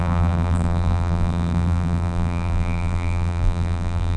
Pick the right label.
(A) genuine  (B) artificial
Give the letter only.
B